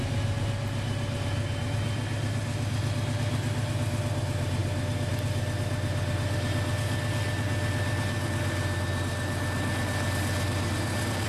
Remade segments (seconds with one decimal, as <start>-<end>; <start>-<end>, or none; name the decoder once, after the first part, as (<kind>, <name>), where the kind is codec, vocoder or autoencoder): none